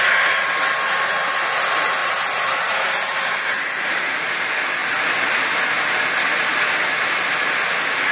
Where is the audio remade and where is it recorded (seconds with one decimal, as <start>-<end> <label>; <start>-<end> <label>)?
0.0-2.0 recorded; 2.0-3.9 remade; 3.9-8.1 recorded